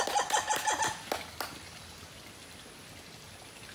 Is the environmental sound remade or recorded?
recorded